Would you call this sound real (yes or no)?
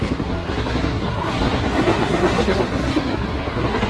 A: no